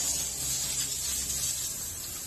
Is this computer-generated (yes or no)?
no